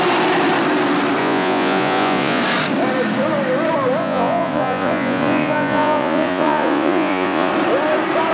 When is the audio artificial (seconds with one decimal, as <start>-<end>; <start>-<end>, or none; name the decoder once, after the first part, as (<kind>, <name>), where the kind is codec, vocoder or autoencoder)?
1.2-2.4 (vocoder, Vocos); 4.0-7.5